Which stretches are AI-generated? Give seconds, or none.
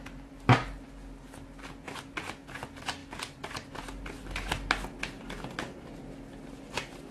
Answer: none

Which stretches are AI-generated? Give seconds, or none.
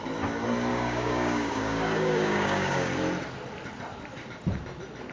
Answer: 0.7-2.9 (codec, DAC)